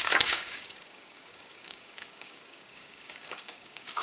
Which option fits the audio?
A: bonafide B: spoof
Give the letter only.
B